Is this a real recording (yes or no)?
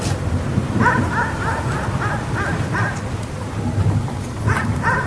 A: yes